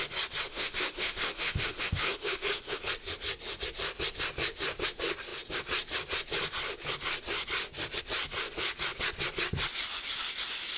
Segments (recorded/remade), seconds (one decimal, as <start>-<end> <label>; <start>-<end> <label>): 0.0-0.5 recorded; 0.5-2.8 remade; 2.8-10.8 recorded